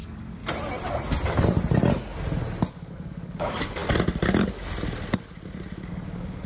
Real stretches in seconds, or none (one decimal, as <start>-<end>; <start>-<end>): 0.4-2.7; 3.8-5.9